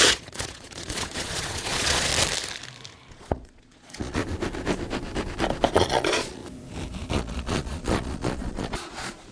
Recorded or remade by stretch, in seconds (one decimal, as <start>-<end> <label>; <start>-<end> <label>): 0.0-2.1 remade; 2.1-3.1 recorded; 3.1-4.2 remade; 4.2-5.7 recorded; 5.7-6.4 remade; 6.4-7.1 recorded; 7.1-9.3 remade